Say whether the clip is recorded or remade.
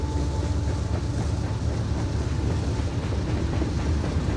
recorded